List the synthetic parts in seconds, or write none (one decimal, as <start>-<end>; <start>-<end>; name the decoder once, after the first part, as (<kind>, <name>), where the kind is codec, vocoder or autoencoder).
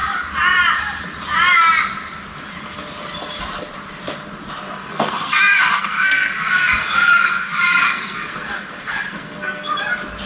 4.8-9.7 (codec, SNAC)